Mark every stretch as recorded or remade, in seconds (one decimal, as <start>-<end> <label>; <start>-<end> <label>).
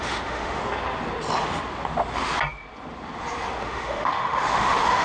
0.0-0.6 remade; 0.6-3.6 recorded; 3.6-5.0 remade